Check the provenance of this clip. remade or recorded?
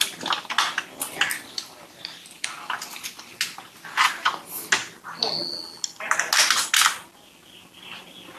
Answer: recorded